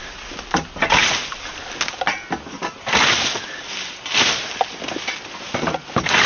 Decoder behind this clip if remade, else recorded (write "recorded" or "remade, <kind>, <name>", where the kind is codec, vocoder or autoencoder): recorded